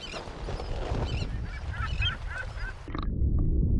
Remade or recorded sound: recorded